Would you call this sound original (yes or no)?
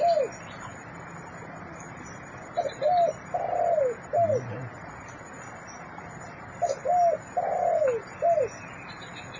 yes